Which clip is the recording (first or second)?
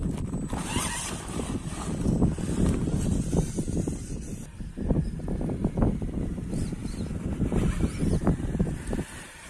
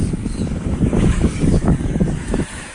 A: first